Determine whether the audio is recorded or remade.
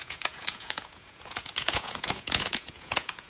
remade